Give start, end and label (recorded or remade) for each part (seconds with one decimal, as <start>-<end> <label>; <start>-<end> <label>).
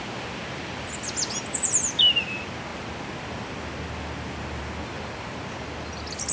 0.0-6.3 recorded